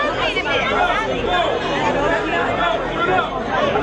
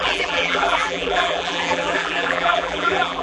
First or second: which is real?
first